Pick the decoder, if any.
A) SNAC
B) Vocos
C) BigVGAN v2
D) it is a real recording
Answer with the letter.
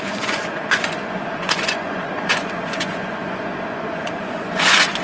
B